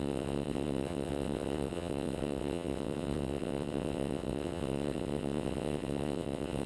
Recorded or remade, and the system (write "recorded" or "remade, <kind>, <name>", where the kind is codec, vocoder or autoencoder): remade, vocoder, WaveNeXt